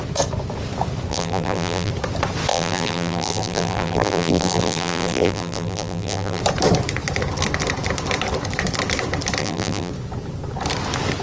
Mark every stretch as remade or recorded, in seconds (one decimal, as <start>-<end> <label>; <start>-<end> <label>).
0.0-1.1 recorded; 1.1-1.9 remade; 1.9-2.5 recorded; 2.5-6.4 remade; 6.4-9.4 recorded; 9.4-9.9 remade; 9.9-11.2 recorded